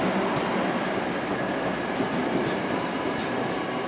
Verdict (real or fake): real